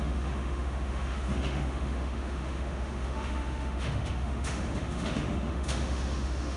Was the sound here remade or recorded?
remade